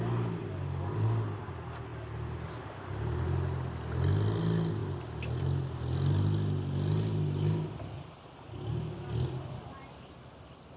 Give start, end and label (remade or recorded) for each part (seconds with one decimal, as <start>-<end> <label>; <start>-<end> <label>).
0.0-10.8 recorded